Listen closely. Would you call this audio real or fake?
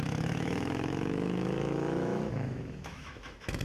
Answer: fake